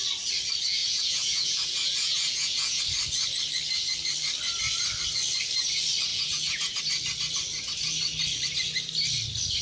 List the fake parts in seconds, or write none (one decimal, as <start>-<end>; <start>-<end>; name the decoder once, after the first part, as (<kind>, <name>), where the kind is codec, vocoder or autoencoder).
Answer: 0.8-2.8 (vocoder, Vocos); 6.1-6.8